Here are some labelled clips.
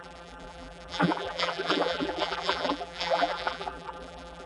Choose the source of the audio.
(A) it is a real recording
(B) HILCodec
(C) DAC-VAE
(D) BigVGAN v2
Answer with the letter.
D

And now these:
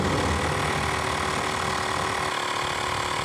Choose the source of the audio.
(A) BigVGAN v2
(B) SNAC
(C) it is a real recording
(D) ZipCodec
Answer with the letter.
C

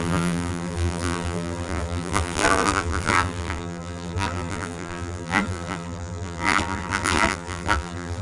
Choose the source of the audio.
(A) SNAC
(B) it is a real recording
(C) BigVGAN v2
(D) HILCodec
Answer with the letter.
C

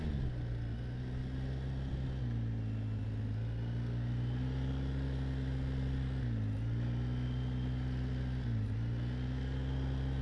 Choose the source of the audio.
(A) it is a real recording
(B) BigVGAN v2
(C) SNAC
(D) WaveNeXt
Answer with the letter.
A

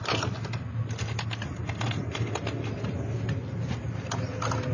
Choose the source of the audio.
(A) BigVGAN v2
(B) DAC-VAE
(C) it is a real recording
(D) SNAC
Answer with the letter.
C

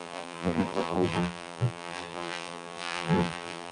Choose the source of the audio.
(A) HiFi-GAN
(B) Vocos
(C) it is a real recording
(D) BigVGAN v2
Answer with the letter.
D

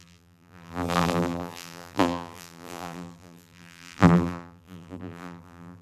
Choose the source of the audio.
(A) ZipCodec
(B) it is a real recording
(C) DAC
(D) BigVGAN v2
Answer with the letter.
D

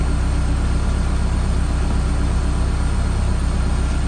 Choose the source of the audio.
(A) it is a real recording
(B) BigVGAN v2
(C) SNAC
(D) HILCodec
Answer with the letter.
A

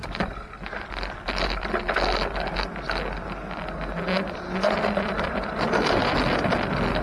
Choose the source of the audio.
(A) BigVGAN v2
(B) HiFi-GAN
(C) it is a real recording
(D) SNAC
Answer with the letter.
C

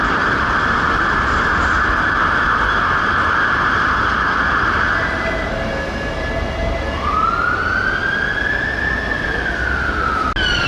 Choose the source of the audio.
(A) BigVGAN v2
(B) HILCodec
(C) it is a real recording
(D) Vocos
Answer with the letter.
C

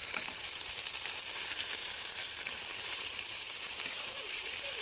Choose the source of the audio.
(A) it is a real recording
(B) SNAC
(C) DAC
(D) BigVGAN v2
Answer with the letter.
D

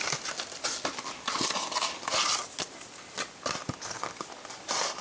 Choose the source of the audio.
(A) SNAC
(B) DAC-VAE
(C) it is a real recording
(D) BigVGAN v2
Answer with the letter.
C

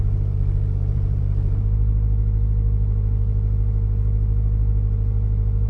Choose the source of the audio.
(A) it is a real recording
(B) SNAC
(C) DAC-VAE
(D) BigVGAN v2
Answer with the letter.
D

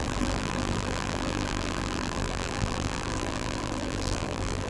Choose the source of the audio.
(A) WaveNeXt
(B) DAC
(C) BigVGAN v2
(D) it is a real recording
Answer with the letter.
C